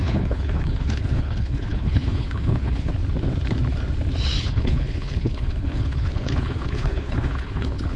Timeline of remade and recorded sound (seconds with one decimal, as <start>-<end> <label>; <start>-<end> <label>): 0.0-2.9 remade; 2.9-4.4 recorded; 4.4-8.0 remade